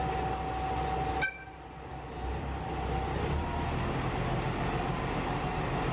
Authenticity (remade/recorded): recorded